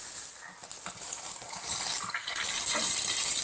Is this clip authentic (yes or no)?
yes